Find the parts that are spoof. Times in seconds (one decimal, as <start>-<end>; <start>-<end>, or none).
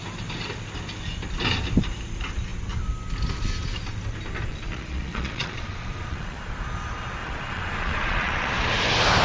4.5-6.4; 7.2-8.5